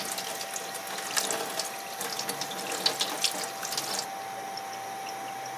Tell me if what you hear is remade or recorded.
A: recorded